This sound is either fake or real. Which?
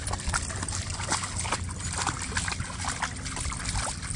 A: real